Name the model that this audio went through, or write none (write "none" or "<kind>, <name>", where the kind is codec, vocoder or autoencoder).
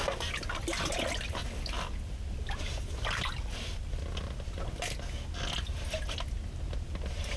none